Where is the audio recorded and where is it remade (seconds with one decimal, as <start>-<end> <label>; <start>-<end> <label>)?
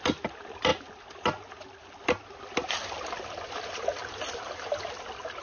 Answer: 0.0-4.0 recorded; 4.0-4.9 remade; 4.9-5.4 recorded